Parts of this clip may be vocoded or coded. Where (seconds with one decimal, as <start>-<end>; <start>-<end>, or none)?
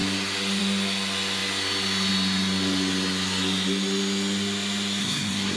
5.0-5.6